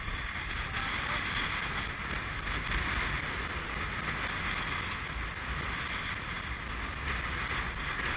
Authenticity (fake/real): real